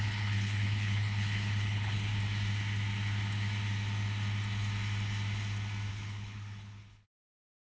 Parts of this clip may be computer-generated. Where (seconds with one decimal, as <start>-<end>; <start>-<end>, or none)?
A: 0.0-2.1; 5.9-7.7